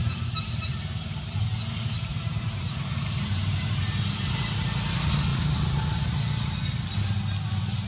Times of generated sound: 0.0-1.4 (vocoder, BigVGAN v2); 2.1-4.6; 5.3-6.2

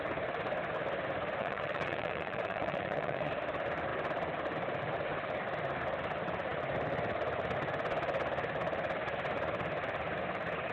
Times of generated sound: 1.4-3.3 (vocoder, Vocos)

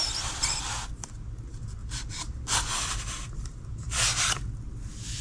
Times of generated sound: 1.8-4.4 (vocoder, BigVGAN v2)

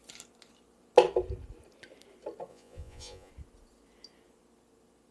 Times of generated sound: 2.5-3.3 (vocoder, Vocos)